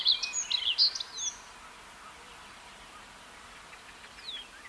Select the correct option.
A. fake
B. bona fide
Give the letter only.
B